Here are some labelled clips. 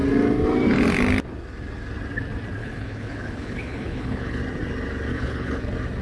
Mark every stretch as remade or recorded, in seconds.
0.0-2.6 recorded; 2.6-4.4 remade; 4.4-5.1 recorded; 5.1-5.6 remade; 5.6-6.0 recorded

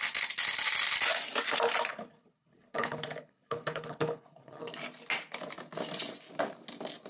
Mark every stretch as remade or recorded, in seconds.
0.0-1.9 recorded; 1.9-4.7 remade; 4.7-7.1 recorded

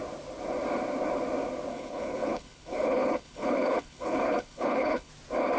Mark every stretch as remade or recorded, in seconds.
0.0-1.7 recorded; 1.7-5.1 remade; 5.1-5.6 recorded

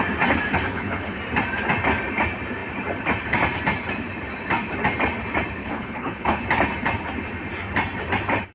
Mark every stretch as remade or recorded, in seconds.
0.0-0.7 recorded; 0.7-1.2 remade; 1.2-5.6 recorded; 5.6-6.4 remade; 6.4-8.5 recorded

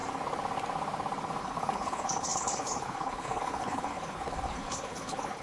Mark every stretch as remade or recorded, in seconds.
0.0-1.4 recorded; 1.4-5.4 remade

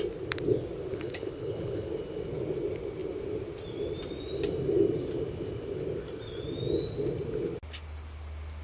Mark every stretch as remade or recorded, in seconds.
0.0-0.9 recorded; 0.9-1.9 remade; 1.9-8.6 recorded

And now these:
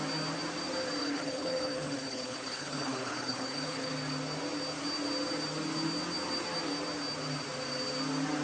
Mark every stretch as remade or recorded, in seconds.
0.0-1.0 recorded; 1.0-3.9 remade; 3.9-8.4 recorded

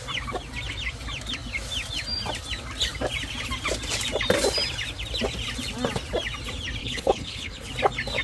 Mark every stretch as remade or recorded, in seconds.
0.0-6.8 recorded; 6.8-7.7 remade; 7.7-8.2 recorded